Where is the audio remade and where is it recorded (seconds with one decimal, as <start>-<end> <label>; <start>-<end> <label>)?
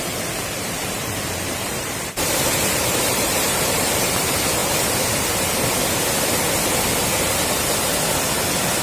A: 0.0-4.6 remade; 4.6-8.8 recorded